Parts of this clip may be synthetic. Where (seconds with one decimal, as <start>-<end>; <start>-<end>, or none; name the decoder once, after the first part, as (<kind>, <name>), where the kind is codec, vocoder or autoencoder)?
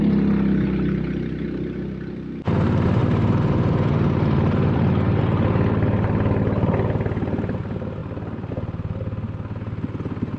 3.0-5.2 (vocoder, BigVGAN v2); 8.0-8.5